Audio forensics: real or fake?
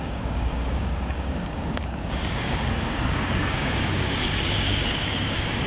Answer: fake